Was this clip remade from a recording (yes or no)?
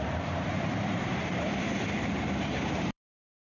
yes